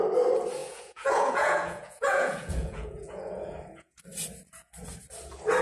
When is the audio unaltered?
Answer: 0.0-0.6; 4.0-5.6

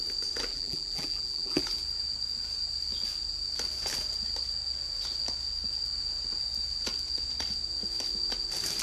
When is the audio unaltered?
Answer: 0.0-0.5; 1.6-8.8

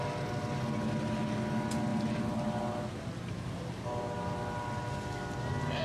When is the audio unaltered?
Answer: 0.0-5.8

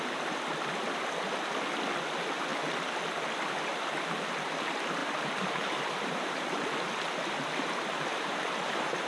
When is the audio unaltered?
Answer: 0.0-5.0; 6.5-8.1

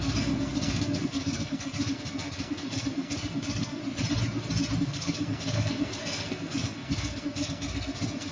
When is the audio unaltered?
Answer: 3.8-4.8